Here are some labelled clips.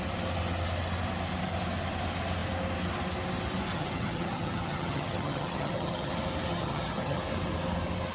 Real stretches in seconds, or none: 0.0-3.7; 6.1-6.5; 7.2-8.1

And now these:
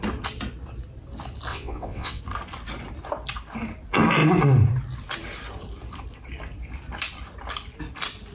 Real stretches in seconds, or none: 0.0-1.5; 2.2-8.3

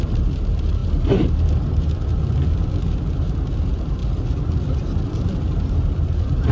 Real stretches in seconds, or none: 2.1-3.1; 4.0-4.8

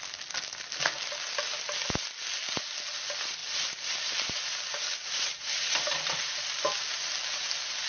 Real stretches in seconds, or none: 0.0-3.4; 4.5-5.0; 6.9-7.9

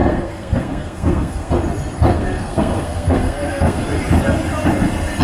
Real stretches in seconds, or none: 1.5-2.1; 3.8-5.2